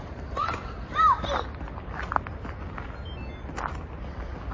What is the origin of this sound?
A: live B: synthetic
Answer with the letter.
A